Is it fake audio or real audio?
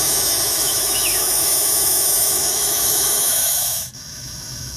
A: fake